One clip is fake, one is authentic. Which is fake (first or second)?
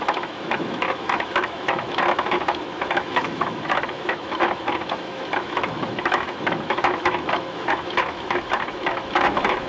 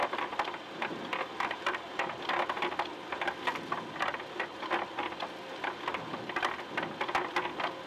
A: first